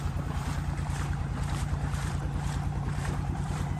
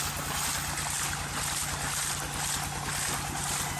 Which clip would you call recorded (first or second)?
second